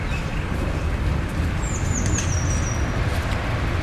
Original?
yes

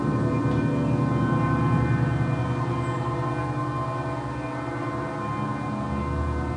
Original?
yes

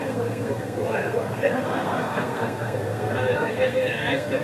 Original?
no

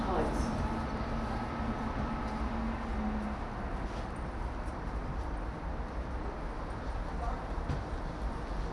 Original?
yes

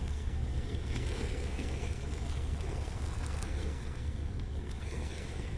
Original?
no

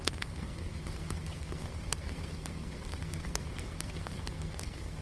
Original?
no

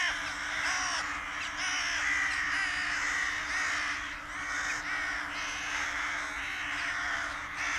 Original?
yes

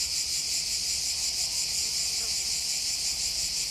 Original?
yes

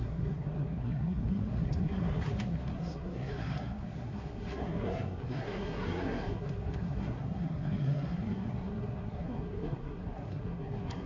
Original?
no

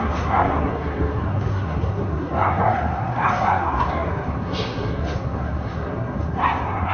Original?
no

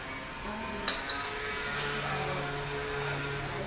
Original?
yes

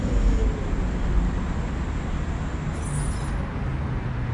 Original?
yes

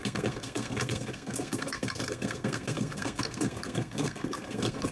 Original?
no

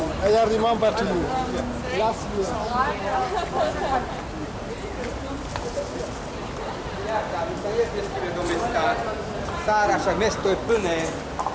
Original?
yes